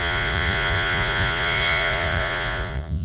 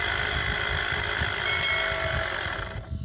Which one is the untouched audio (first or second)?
second